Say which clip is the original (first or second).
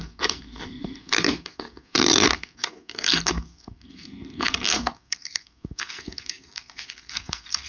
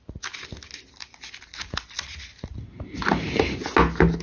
second